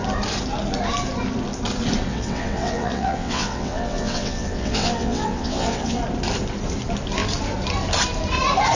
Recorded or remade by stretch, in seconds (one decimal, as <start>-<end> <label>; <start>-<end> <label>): 0.0-2.1 recorded; 2.1-6.0 remade; 6.0-8.7 recorded